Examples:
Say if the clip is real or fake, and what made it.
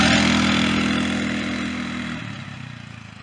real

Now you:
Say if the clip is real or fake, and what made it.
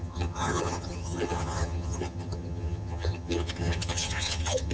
fake, vocoder, HiFi-GAN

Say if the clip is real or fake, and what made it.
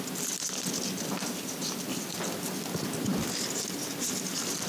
real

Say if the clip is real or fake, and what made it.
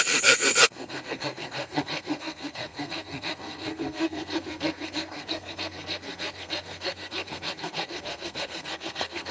fake, codec, SNAC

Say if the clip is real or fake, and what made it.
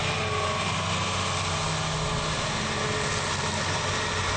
real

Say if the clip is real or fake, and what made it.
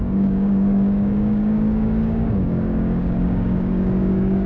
fake, codec, DAC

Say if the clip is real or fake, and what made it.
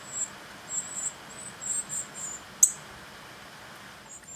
real